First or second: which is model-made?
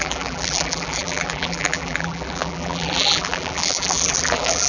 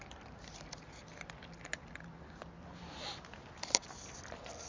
first